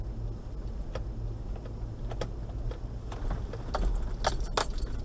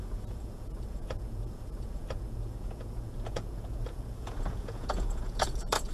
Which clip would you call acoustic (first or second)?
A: first